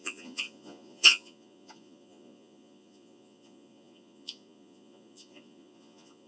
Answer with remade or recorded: remade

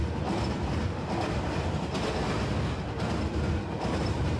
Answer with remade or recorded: recorded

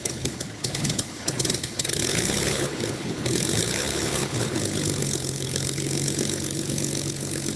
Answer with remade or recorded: remade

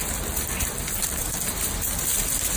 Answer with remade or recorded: recorded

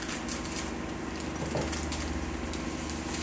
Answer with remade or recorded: recorded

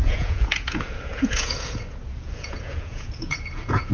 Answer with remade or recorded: remade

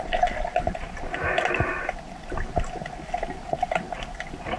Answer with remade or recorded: recorded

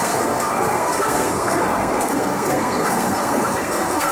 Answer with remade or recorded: remade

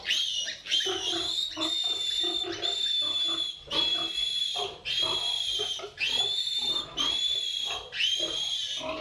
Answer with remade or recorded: recorded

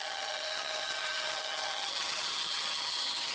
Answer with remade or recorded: remade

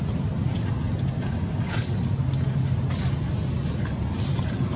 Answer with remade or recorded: recorded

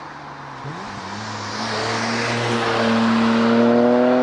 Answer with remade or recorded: recorded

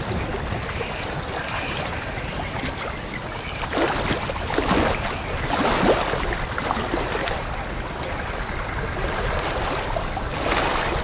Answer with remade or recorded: recorded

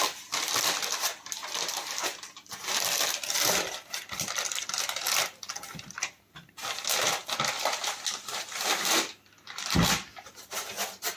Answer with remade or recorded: recorded